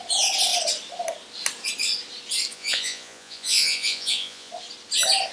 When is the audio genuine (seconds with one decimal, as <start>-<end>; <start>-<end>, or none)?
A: 0.0-2.5; 4.5-5.3